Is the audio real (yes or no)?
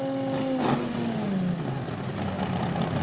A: yes